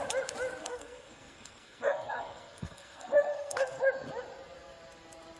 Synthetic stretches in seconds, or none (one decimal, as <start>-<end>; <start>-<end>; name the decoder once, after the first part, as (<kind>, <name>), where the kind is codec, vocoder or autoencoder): 0.6-3.8 (codec, SNAC)